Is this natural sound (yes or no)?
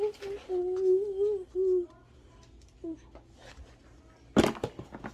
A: yes